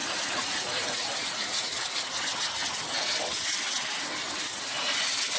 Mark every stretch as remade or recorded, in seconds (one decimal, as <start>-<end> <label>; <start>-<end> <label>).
0.0-2.0 remade; 2.0-5.4 recorded